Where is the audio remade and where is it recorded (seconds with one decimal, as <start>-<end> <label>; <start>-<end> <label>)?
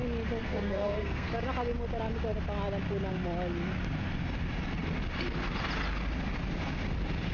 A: 0.0-0.4 recorded; 0.4-1.3 remade; 1.3-7.3 recorded